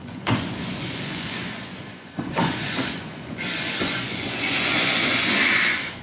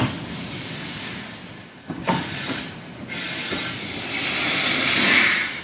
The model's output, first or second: first